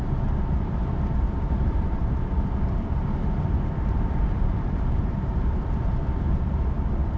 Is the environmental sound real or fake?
fake